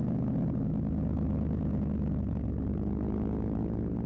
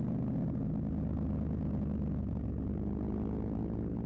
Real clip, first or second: second